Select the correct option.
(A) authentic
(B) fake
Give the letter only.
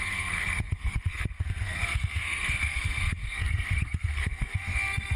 B